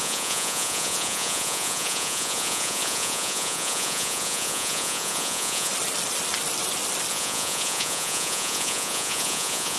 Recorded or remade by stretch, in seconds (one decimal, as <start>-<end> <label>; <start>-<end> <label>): 0.0-5.7 remade; 5.7-7.1 recorded; 7.1-9.8 remade